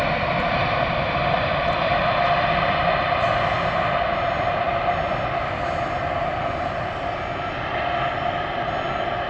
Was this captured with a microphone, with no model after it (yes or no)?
yes